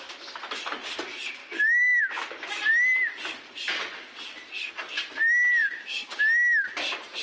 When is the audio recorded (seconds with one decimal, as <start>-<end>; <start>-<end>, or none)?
0.0-1.4; 2.0-5.6; 6.2-7.2